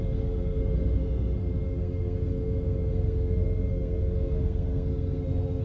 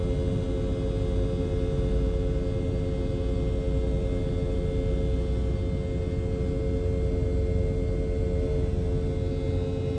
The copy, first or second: first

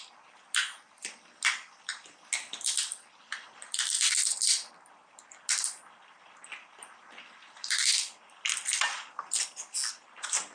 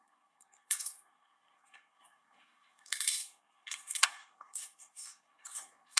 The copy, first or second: second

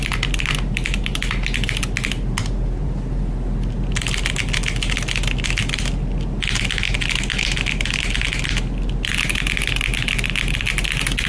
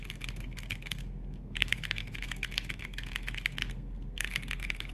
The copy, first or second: second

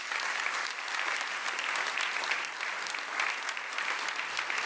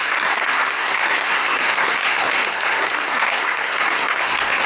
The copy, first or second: second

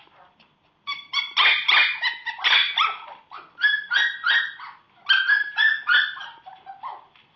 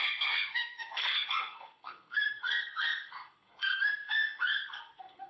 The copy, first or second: second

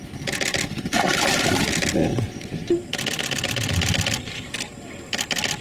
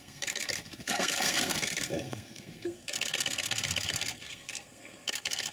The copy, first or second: second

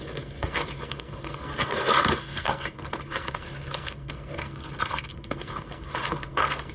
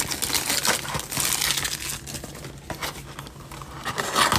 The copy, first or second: first